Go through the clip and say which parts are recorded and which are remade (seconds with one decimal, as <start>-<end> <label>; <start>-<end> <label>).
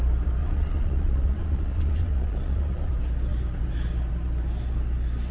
0.0-0.4 recorded; 0.4-2.9 remade; 2.9-5.3 recorded